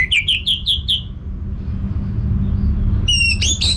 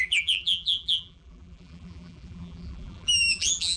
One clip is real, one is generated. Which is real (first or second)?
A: first